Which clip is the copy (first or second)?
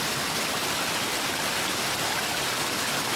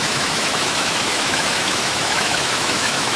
second